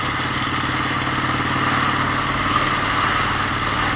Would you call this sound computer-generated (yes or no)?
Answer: no